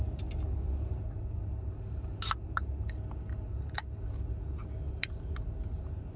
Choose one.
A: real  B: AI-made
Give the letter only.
A